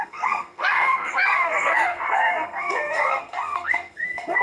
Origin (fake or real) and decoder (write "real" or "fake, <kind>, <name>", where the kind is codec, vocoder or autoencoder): fake, codec, SNAC